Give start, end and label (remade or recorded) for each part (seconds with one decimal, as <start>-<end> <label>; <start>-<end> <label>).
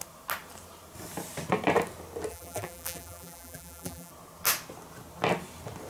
0.0-2.3 recorded; 2.3-4.1 remade; 4.1-5.9 recorded